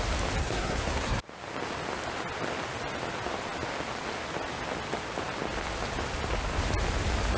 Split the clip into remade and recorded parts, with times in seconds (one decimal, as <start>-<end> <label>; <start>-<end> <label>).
0.0-0.4 recorded; 0.4-1.2 remade; 1.2-7.4 recorded